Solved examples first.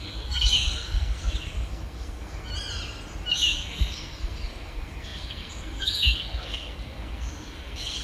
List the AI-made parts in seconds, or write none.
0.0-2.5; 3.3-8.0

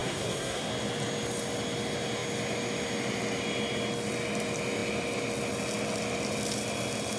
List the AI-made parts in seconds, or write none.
0.0-0.7

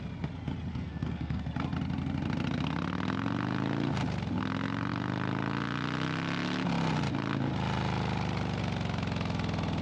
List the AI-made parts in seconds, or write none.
0.7-1.4

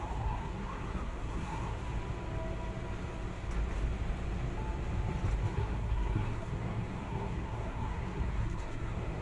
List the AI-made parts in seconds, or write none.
0.0-1.8; 5.5-9.2

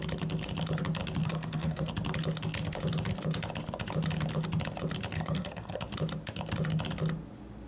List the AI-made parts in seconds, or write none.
1.2-1.9; 5.1-5.8